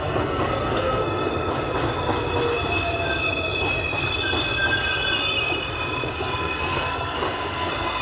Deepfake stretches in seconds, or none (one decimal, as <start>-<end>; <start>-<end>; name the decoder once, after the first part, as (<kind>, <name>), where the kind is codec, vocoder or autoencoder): 0.0-1.3 (codec, SNAC); 6.1-8.0